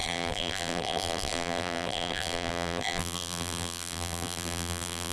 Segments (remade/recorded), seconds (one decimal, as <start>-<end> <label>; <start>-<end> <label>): 0.0-5.1 remade

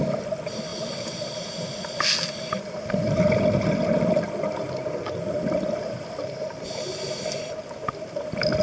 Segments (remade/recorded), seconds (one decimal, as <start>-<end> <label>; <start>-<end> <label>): 0.0-0.7 recorded; 0.7-1.5 remade; 1.5-8.6 recorded

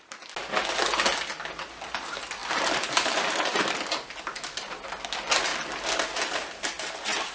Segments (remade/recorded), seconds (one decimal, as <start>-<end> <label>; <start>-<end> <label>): 0.0-2.4 recorded; 2.4-3.7 remade; 3.7-5.5 recorded; 5.5-7.3 remade